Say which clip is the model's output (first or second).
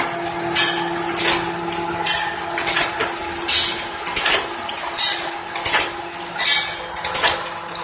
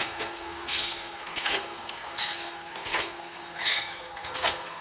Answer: second